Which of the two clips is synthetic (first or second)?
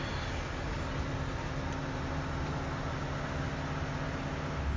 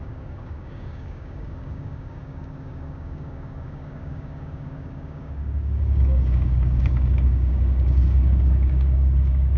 second